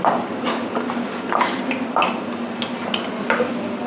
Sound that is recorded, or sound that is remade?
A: recorded